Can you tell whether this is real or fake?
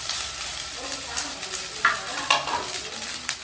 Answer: real